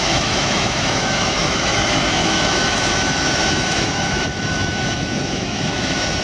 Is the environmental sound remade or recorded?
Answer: remade